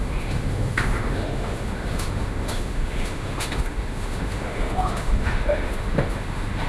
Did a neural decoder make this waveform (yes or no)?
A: yes